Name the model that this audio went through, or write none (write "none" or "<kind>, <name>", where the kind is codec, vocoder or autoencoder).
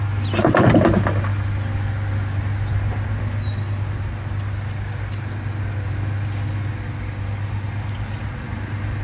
none